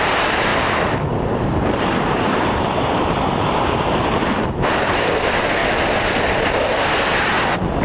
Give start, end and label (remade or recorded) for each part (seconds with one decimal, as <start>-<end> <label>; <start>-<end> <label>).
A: 0.0-5.6 remade; 5.6-7.8 recorded